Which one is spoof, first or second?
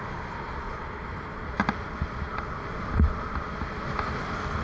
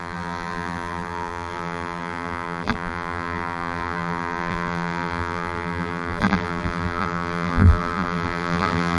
second